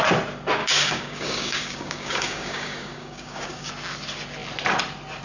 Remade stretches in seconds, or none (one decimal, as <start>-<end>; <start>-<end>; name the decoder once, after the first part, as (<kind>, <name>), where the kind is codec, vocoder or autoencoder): 0.6-3.7 (codec, DAC)